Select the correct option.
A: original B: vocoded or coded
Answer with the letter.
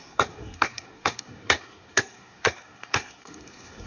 B